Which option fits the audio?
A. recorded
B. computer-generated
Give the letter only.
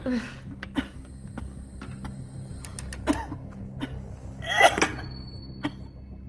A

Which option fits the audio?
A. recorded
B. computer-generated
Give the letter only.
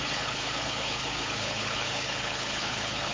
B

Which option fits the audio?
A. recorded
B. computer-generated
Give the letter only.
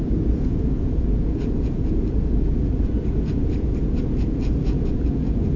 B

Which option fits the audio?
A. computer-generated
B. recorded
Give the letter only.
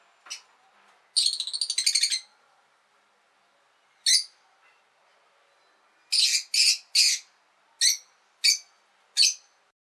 B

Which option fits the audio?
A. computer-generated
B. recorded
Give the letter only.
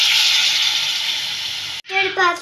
B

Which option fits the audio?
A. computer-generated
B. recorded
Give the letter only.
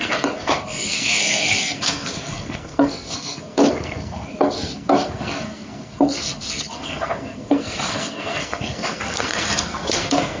A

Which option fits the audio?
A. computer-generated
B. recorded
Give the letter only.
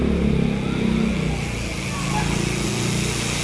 B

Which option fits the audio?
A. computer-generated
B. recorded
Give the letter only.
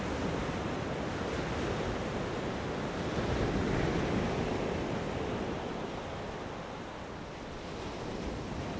B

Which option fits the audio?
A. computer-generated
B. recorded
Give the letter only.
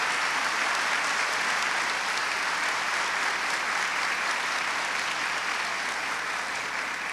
B